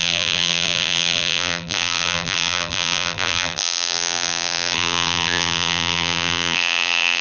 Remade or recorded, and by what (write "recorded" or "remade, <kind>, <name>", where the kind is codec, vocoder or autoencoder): remade, vocoder, BigVGAN v2